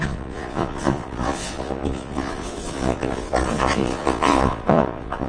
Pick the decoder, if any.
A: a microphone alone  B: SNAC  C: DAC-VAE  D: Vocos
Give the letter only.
D